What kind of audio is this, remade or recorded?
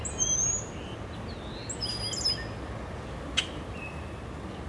recorded